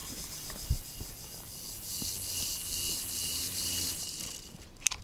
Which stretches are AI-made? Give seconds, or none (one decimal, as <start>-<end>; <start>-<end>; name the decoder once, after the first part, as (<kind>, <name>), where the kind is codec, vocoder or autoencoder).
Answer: 3.2-5.0 (vocoder, BigVGAN v2)